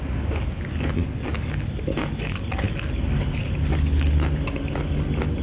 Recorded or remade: recorded